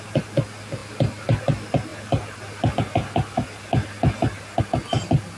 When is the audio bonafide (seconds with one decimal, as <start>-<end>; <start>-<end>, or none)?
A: 0.0-5.4